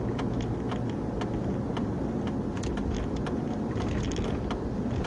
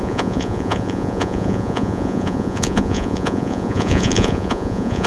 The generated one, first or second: second